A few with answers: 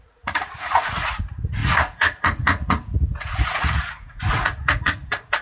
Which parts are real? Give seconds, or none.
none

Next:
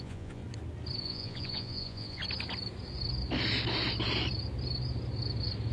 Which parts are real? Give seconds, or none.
0.4-1.0; 2.2-5.7

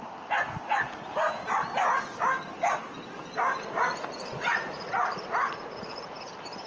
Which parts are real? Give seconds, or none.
0.0-3.5; 6.2-6.7